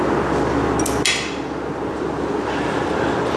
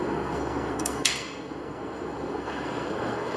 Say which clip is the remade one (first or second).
second